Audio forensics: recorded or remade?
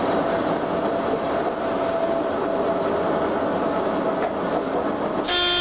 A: recorded